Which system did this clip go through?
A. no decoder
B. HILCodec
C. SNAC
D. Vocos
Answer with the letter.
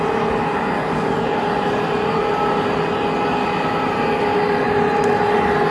A